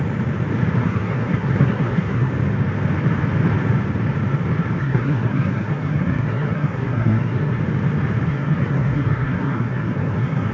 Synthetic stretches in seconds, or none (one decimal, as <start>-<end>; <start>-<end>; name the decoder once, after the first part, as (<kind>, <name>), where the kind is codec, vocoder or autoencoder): 0.8-2.3 (codec, SNAC); 4.8-7.6; 8.3-10.5